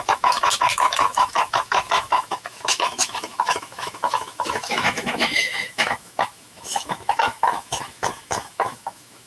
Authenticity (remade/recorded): remade